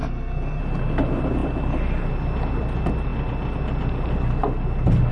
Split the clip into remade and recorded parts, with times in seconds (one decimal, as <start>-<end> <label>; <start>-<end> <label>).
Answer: 0.0-0.6 remade; 0.6-5.1 recorded